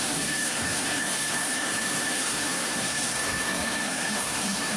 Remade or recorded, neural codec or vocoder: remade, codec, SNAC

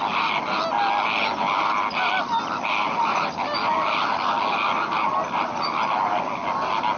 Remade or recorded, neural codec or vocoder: recorded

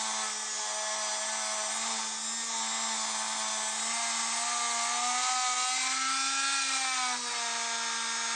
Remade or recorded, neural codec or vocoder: recorded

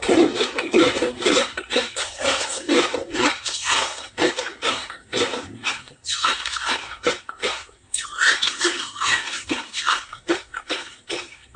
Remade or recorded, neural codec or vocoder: remade, codec, SNAC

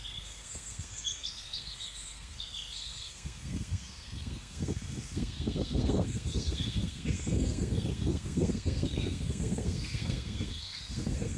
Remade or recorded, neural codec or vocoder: remade, codec, SNAC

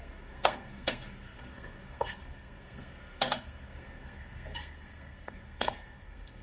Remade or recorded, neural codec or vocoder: remade, codec, SNAC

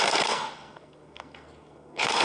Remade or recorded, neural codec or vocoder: remade, codec, SNAC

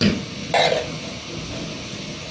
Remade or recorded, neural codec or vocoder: recorded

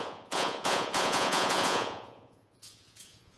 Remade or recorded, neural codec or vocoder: remade, vocoder, Vocos